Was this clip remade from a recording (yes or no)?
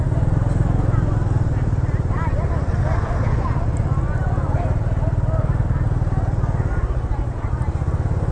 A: no